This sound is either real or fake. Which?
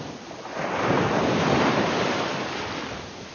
real